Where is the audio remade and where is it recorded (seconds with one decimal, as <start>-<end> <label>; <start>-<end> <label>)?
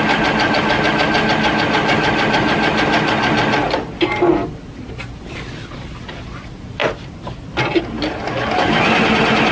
0.0-9.5 recorded